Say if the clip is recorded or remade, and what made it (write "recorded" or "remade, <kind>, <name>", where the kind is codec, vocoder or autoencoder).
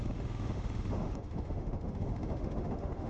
remade, autoencoder, DAC-VAE